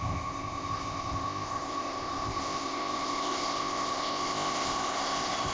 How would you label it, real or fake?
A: fake